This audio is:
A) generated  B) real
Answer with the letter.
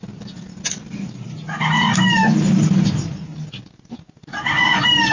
B